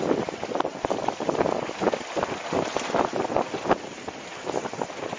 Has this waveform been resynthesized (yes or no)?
no